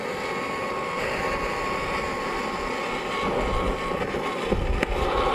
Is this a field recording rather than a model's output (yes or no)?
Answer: yes